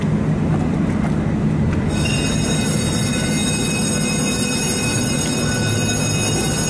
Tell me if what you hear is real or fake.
real